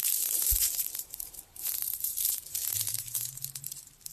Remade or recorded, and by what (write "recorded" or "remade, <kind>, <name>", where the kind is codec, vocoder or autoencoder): remade, vocoder, BigVGAN v2